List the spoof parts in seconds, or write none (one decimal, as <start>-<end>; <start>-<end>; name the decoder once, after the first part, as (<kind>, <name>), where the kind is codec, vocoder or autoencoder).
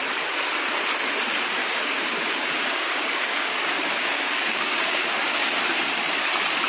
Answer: 1.6-5.6 (codec, DAC)